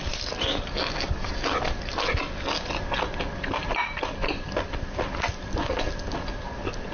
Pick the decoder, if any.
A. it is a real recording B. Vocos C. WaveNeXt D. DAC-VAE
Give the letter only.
A